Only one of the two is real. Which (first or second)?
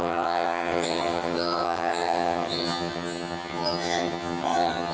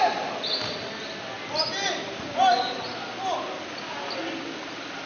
second